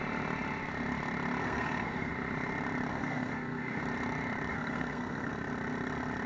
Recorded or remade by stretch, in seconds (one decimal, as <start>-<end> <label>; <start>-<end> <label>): 0.0-1.4 recorded; 1.4-2.1 remade; 2.1-2.9 recorded; 2.9-3.8 remade; 3.8-4.5 recorded; 4.5-5.3 remade; 5.3-6.3 recorded